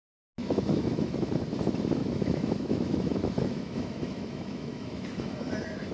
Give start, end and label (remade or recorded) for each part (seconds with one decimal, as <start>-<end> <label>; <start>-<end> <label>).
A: 0.0-0.4 recorded; 0.4-1.3 remade; 1.3-2.0 recorded; 2.0-5.5 remade; 5.5-5.9 recorded